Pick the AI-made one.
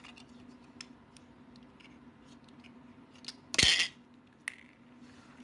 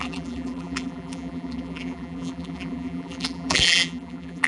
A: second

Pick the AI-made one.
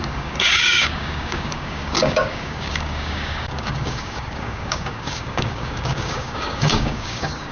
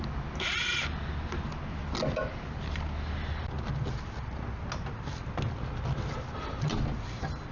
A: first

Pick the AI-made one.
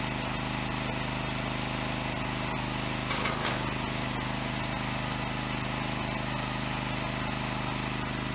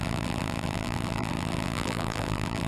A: second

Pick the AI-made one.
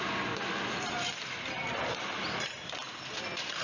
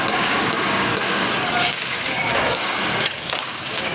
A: second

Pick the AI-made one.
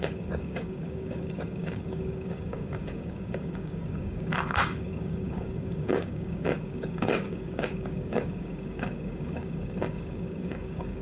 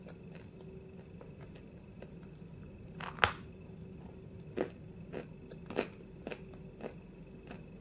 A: first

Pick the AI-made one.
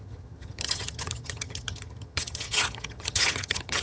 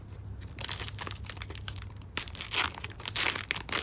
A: first